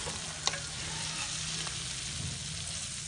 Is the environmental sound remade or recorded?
recorded